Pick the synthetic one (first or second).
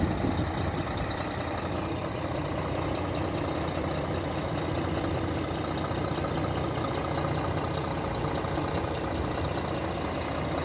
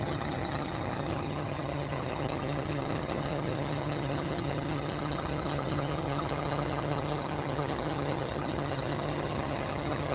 second